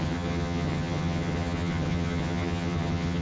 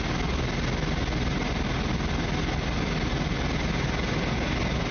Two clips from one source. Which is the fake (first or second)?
first